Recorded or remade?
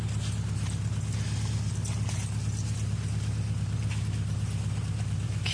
recorded